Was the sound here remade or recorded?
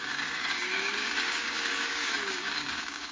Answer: remade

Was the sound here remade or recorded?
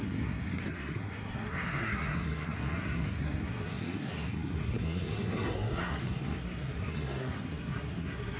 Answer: remade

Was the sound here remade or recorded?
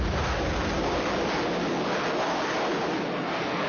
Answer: recorded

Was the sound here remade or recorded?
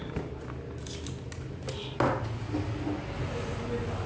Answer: recorded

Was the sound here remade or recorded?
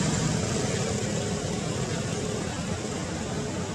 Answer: recorded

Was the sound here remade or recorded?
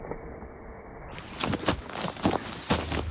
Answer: recorded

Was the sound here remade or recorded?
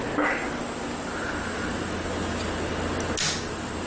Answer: recorded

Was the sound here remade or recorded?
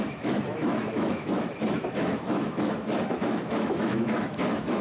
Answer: remade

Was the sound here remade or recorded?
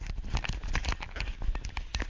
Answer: recorded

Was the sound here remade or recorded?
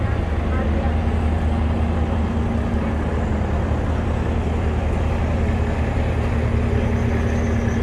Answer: recorded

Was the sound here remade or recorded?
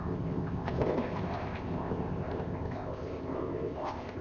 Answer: remade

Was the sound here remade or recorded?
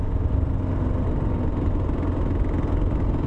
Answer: recorded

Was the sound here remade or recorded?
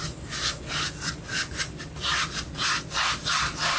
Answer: recorded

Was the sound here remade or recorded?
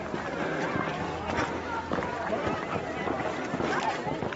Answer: recorded